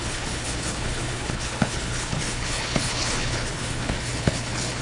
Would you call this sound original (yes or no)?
no